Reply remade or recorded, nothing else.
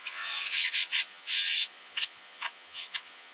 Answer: remade